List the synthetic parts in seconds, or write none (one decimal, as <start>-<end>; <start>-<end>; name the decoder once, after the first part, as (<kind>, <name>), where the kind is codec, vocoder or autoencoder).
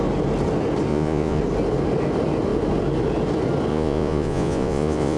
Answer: 0.9-1.4 (vocoder, Vocos); 3.7-5.2